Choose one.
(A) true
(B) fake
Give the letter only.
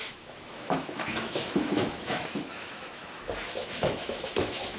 B